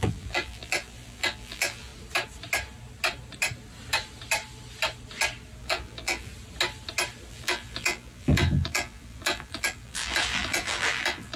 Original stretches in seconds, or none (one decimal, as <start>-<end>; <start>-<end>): 1.9-5.6; 6.3-7.3